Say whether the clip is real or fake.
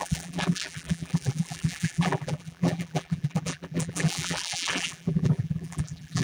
fake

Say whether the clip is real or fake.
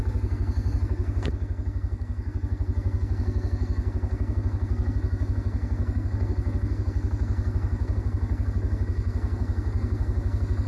fake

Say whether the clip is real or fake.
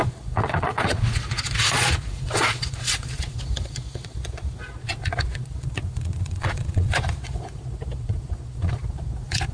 fake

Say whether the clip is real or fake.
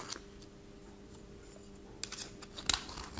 real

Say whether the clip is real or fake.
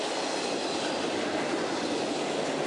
real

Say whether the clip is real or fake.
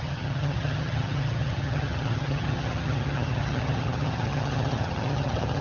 fake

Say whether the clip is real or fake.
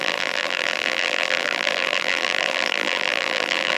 fake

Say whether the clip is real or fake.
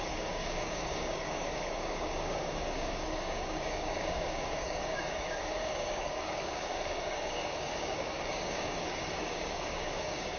fake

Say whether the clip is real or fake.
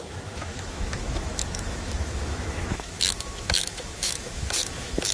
fake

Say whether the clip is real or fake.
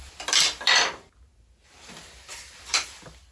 real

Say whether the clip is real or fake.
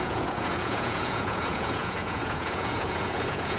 fake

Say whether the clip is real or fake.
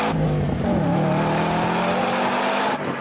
real